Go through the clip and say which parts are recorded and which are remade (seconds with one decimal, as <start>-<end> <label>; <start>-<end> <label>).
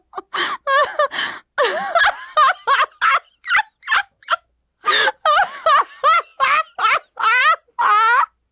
0.0-4.0 recorded; 4.0-4.6 remade; 4.6-8.5 recorded